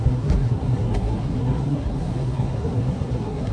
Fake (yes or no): yes